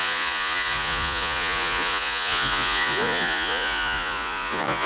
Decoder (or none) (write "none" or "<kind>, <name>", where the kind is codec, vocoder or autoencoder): vocoder, Vocos